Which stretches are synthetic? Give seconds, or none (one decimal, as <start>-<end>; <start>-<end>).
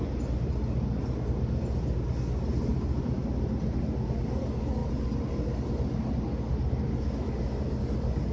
2.7-3.2